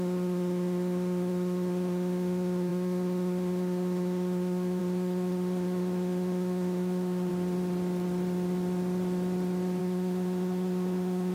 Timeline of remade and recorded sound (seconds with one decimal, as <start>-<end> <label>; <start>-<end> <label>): 0.0-7.3 remade; 7.3-9.8 recorded; 9.8-11.3 remade